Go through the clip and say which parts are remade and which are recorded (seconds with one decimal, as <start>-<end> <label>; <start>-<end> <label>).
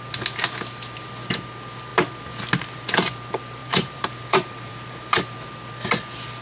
0.0-3.6 recorded; 3.6-5.2 remade; 5.2-6.4 recorded